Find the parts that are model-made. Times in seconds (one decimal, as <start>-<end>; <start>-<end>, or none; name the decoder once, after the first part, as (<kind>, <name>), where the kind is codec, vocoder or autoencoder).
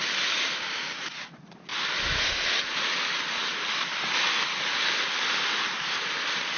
none